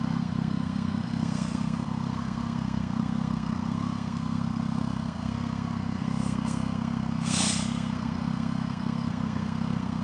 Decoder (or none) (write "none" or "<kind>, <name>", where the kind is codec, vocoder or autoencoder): codec, SNAC